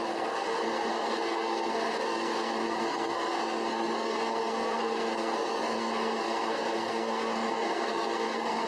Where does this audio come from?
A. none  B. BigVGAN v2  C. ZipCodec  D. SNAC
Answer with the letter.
D